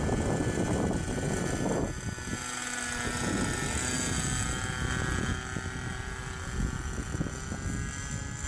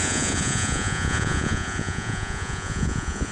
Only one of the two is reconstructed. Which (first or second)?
second